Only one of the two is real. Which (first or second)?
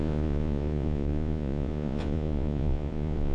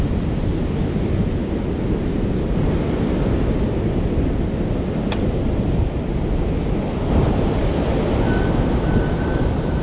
second